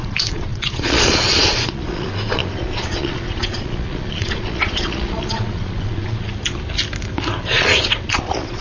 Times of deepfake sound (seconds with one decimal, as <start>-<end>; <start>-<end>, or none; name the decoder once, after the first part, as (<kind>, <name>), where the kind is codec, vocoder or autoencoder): 0.0-6.3 (vocoder, Vocos); 7.4-8.6